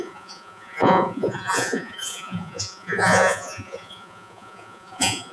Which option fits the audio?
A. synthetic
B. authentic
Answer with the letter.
A